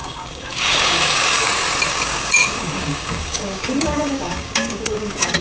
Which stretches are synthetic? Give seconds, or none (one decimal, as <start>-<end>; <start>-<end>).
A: 0.0-1.5; 1.9-5.4